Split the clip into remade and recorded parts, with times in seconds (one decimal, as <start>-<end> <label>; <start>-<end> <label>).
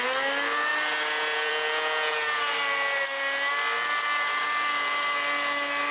0.0-5.9 recorded